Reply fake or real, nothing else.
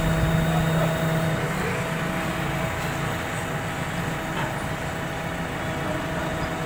real